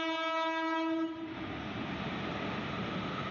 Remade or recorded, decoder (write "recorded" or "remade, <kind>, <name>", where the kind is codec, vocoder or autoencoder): recorded